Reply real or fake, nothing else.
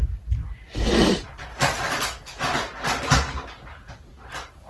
real